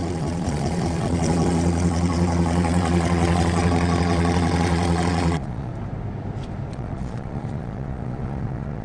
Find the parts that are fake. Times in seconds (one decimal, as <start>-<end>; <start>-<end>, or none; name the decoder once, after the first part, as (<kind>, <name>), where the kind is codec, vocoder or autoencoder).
0.0-5.7 (vocoder, Vocos); 6.7-8.8